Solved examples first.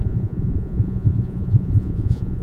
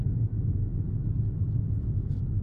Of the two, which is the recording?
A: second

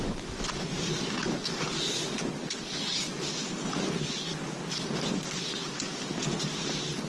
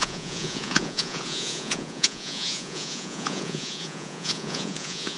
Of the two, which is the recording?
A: first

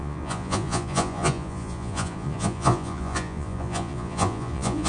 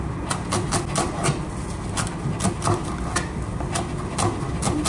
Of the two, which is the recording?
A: second